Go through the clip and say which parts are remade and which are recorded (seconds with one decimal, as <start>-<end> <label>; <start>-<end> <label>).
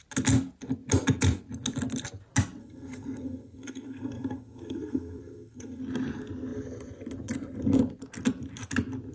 0.0-2.6 recorded; 2.6-5.8 remade; 5.8-9.1 recorded